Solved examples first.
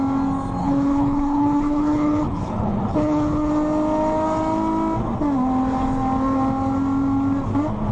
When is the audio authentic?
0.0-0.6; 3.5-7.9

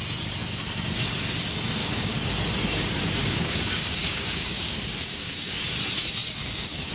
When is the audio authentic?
0.0-1.8; 2.3-3.2; 5.6-6.2

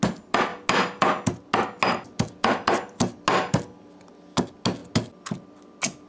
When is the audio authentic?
0.0-6.1

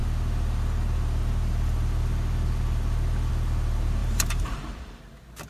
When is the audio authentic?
0.0-4.0; 5.0-5.5

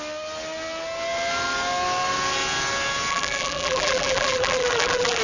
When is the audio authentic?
0.0-3.1

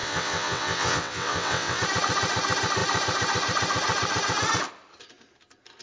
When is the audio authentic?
1.8-5.8

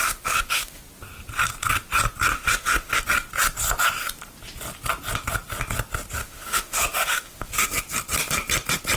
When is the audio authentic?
0.8-2.3; 3.0-6.2; 7.7-9.0

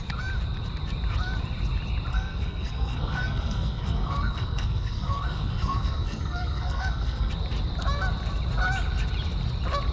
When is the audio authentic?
0.0-2.1; 7.3-9.9